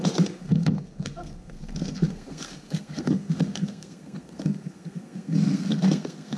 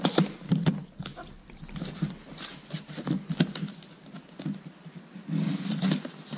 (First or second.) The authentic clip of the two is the second